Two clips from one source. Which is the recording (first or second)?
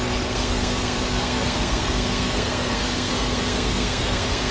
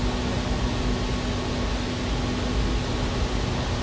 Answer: second